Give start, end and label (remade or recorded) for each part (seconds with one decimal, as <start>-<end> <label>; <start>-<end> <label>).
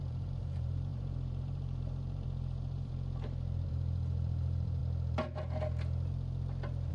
0.0-4.8 remade; 4.8-6.9 recorded